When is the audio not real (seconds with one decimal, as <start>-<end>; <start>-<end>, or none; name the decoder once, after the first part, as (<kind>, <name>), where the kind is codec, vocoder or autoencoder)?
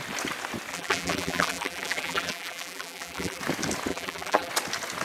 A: 0.7-3.4 (vocoder, BigVGAN v2); 3.9-4.5